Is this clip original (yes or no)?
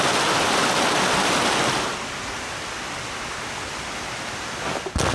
yes